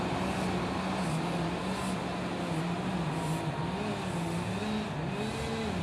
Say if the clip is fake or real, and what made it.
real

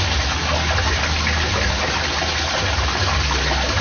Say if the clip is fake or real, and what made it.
real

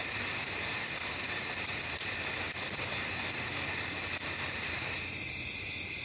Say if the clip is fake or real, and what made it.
real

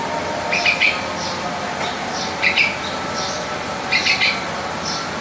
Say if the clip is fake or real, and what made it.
fake, vocoder, BigVGAN v2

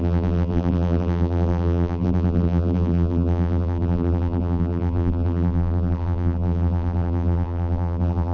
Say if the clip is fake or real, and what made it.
fake, vocoder, BigVGAN v2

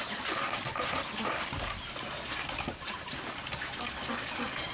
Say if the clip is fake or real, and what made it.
real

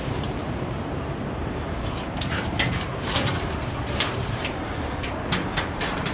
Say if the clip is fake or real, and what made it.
fake, vocoder, BigVGAN v2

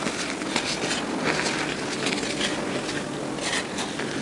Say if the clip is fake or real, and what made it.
real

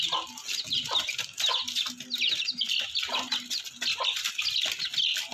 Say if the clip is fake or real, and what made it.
real